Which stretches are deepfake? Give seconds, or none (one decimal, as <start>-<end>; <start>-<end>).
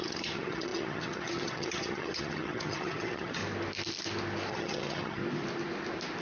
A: 0.0-3.4; 4.5-5.2